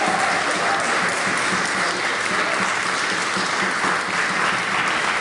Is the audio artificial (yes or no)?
no